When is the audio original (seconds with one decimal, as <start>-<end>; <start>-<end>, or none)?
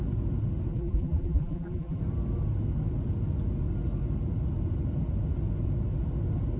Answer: 0.0-0.7; 2.0-6.6